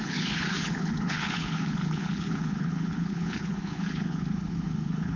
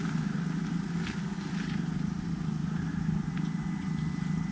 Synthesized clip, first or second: first